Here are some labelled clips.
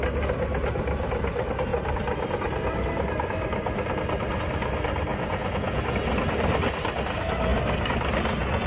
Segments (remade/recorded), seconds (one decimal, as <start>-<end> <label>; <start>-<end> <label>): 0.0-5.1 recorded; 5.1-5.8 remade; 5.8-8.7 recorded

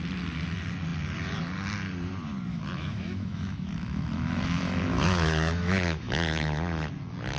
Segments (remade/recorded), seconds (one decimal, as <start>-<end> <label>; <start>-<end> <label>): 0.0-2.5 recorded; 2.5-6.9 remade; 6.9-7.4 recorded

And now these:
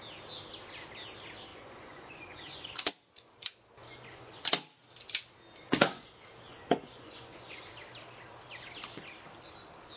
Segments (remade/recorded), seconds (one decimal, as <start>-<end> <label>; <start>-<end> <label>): 0.0-1.5 recorded; 1.5-2.9 remade; 2.9-3.8 recorded; 3.8-4.4 remade; 4.4-5.6 recorded; 5.6-6.1 remade; 6.1-6.5 recorded; 6.5-7.7 remade; 7.7-10.0 recorded

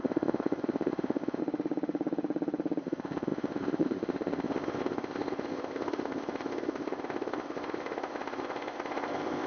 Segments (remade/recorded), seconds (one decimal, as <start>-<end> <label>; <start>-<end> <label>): 0.0-1.4 remade; 1.4-2.8 recorded; 2.8-9.5 remade

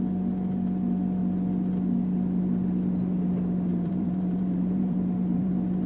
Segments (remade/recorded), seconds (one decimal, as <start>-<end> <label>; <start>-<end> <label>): 0.0-3.7 recorded; 3.7-5.5 remade; 5.5-5.9 recorded

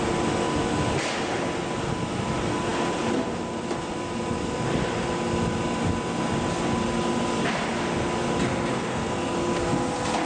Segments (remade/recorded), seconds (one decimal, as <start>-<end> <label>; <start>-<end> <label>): 0.0-8.8 recorded; 8.8-9.3 remade; 9.3-10.3 recorded